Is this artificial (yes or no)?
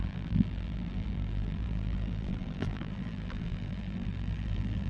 yes